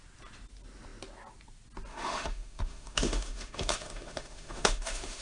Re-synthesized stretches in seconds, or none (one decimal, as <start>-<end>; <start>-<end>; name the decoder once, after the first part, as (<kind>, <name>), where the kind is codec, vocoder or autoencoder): 1.9-5.2 (autoencoder, DAC-VAE)